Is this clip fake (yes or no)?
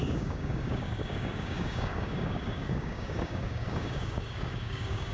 yes